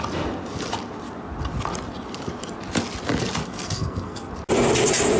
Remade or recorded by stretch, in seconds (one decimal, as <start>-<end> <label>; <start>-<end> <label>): 0.0-3.4 recorded; 3.4-4.3 remade; 4.3-5.2 recorded

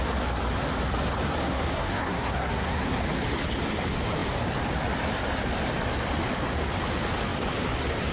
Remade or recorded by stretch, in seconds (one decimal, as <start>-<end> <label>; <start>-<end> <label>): 0.0-1.4 recorded; 1.4-3.0 remade; 3.0-8.1 recorded

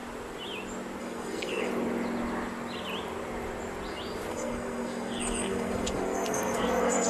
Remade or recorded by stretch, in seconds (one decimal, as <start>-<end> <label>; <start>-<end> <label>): 0.0-1.0 recorded; 1.0-1.7 remade; 1.7-4.3 recorded; 4.3-7.1 remade

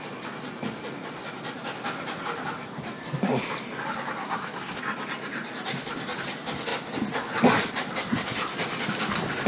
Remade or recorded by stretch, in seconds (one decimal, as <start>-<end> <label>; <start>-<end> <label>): 0.0-4.2 recorded; 4.2-4.8 remade; 4.8-9.5 recorded

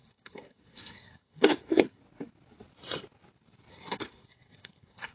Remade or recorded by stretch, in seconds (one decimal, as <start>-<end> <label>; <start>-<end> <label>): 0.0-2.0 remade; 2.0-3.7 recorded; 3.7-5.1 remade

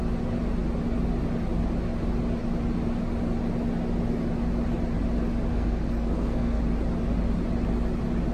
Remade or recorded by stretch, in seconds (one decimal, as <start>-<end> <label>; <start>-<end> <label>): 0.0-5.5 recorded; 5.5-6.6 remade; 6.6-8.3 recorded

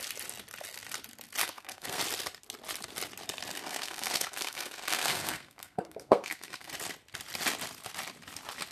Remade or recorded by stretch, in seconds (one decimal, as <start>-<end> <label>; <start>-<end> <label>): 0.0-1.4 recorded; 1.4-2.0 remade; 2.0-3.6 recorded; 3.6-6.7 remade; 6.7-8.7 recorded

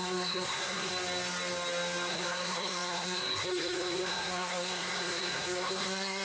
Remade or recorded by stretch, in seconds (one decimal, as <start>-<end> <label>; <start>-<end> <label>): 0.0-0.9 remade; 0.9-2.1 recorded; 2.1-6.2 remade